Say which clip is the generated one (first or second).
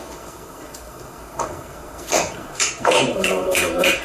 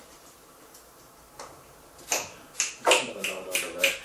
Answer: first